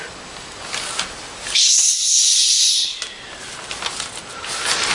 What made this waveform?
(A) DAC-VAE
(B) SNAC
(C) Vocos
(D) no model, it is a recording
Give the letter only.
D